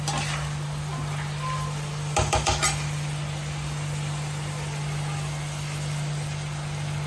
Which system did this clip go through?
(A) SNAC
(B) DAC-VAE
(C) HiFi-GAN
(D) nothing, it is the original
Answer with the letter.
D